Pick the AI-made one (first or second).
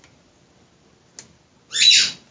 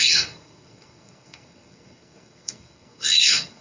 second